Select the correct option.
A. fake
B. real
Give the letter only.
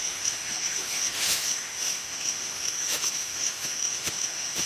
A